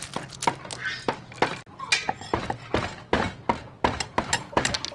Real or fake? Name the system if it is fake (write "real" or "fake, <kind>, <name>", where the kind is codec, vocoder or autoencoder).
real